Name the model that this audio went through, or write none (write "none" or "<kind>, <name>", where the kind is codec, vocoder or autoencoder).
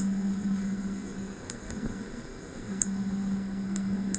codec, SNAC